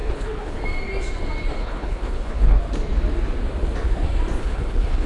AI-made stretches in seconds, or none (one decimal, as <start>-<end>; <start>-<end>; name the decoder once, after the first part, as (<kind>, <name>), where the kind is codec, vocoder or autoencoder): 0.0-0.6 (codec, HILCodec); 1.6-2.6; 4.4-5.1